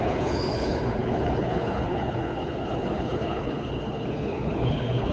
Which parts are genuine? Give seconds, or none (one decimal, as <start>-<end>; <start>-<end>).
none